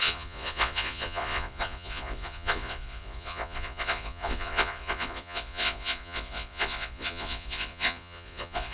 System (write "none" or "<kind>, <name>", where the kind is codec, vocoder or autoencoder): vocoder, Vocos